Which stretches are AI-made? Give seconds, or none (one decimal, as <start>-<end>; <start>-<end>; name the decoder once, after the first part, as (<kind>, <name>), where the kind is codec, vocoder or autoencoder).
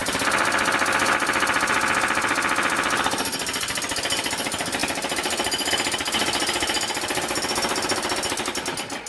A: none